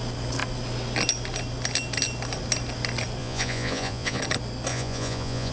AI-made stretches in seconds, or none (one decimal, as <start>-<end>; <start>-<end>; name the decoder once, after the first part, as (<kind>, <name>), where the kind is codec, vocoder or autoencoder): 3.2-4.2 (vocoder, Vocos); 4.7-5.5